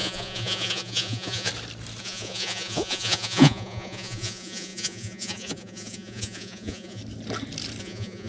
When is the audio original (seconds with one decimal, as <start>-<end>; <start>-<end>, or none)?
1.5-2.0; 7.0-7.8